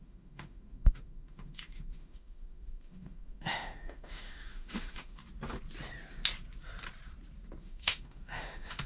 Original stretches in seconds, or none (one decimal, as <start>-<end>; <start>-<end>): 5.2-7.6